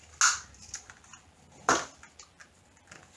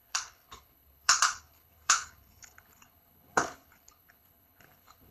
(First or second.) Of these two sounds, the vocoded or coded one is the second